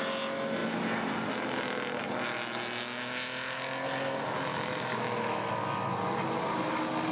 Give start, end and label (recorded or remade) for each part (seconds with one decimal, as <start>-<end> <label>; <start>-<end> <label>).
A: 0.0-4.5 recorded; 4.5-5.5 remade; 5.5-7.1 recorded